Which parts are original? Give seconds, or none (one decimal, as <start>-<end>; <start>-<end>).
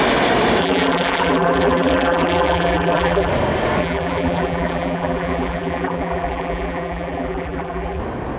0.0-0.6; 3.3-3.8; 8.0-8.4